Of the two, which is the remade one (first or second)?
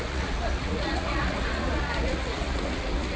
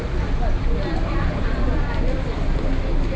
first